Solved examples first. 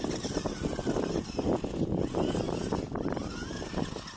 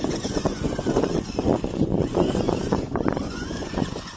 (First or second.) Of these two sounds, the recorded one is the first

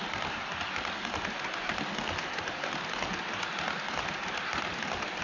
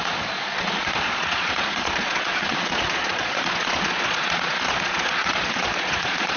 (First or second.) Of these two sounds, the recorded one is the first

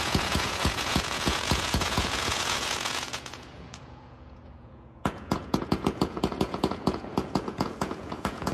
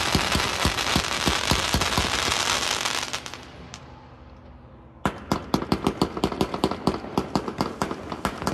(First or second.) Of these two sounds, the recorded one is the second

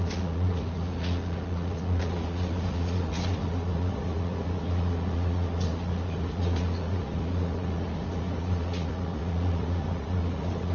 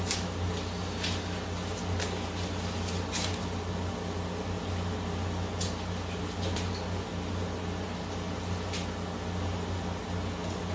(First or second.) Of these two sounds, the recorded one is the second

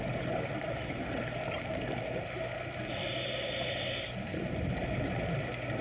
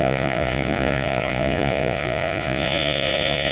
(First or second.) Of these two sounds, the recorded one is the first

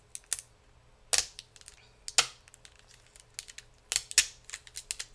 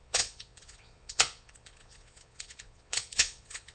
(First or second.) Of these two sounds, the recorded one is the first